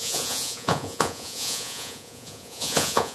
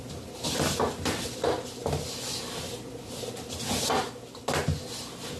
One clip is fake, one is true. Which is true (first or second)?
second